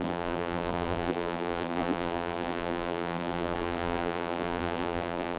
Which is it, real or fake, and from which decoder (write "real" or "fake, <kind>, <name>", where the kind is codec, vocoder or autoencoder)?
fake, vocoder, BigVGAN v2